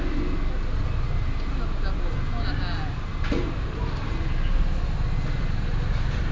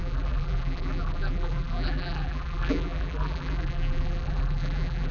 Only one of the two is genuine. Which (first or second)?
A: first